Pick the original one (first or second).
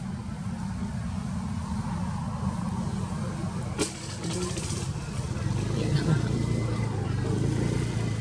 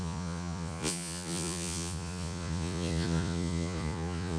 first